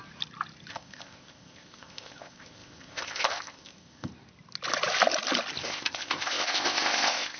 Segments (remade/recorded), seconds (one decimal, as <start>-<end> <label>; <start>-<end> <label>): 0.0-0.7 recorded; 0.7-4.1 remade; 4.1-5.6 recorded; 5.6-7.4 remade